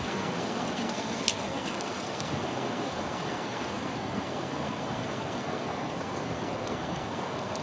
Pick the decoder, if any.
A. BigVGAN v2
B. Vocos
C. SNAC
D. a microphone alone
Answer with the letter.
C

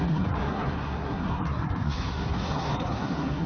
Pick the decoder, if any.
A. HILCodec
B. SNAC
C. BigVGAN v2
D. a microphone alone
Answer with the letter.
B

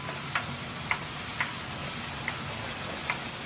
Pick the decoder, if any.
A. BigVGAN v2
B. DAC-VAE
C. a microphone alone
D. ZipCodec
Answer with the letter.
C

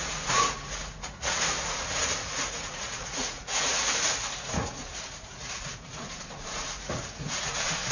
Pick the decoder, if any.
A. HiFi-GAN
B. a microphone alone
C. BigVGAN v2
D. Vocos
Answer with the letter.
D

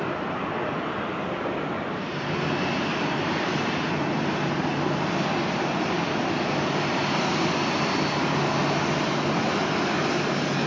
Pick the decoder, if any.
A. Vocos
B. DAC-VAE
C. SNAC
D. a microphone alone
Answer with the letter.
D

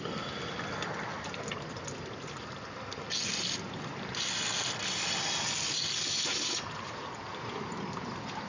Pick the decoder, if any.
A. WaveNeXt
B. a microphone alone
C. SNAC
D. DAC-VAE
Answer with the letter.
B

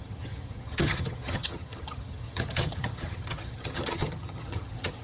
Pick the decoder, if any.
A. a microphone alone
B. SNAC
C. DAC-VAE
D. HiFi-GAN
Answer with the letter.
D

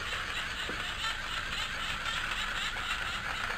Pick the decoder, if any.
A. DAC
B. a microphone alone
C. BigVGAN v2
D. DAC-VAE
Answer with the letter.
B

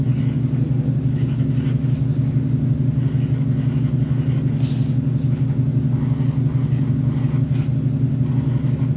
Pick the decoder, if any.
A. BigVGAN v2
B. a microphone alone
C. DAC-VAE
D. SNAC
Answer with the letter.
B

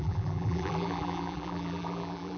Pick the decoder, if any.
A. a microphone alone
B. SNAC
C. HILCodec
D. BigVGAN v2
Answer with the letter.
D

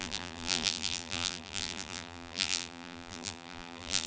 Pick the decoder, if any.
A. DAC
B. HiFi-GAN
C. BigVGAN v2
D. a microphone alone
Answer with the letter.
C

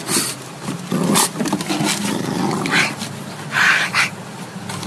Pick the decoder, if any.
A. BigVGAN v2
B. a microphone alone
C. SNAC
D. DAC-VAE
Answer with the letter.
B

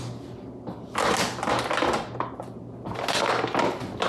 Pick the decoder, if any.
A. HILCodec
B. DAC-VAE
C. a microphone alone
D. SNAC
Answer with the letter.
C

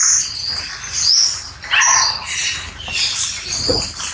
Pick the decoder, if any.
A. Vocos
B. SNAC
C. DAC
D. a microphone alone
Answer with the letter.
D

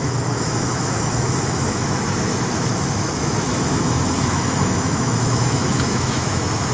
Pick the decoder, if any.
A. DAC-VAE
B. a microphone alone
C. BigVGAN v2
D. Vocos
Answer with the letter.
A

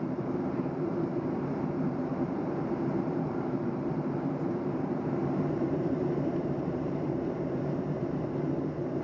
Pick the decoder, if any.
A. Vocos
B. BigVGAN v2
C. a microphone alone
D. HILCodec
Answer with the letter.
B